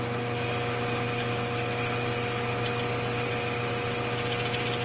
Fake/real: real